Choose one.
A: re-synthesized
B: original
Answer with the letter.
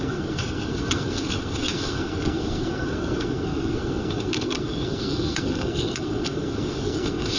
A